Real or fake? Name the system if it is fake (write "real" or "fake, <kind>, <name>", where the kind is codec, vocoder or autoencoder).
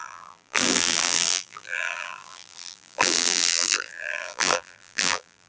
fake, vocoder, BigVGAN v2